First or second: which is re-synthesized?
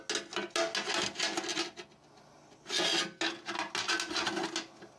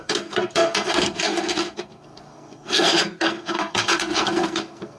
second